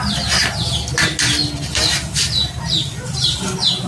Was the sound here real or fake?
real